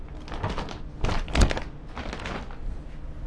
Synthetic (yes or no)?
no